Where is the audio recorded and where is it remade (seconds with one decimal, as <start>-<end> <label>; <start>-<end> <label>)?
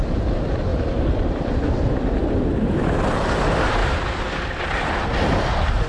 0.0-0.7 recorded; 0.7-2.3 remade; 2.3-3.8 recorded; 3.8-4.5 remade; 4.5-5.9 recorded